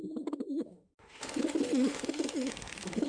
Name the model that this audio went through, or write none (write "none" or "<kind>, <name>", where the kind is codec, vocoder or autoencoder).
autoencoder, DAC-VAE